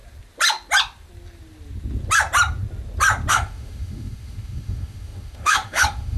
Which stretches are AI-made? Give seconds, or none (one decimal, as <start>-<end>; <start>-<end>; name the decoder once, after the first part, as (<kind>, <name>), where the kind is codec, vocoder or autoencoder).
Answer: 3.3-6.2 (autoencoder, DAC-VAE)